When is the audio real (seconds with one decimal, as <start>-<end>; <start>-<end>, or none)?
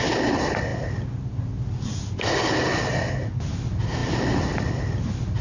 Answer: 0.0-5.4